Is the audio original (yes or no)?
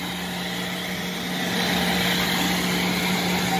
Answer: yes